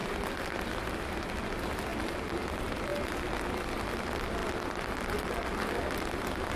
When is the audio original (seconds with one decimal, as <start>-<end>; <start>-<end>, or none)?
0.0-6.6